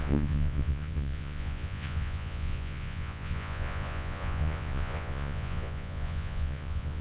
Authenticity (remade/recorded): remade